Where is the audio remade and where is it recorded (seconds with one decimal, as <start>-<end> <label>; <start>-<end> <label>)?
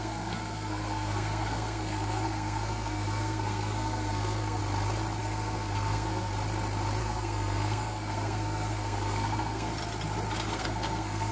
0.0-4.6 remade; 4.6-5.2 recorded; 5.2-6.3 remade; 6.3-7.0 recorded; 7.0-9.7 remade; 9.7-10.5 recorded; 10.5-11.3 remade